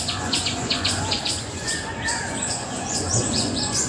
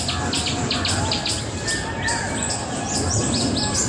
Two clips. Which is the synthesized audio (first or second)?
first